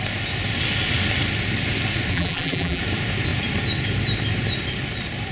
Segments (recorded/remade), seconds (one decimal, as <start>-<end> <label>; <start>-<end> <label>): 0.0-2.1 recorded; 2.1-2.8 remade; 2.8-5.3 recorded